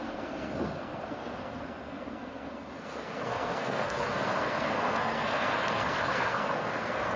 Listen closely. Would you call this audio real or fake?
fake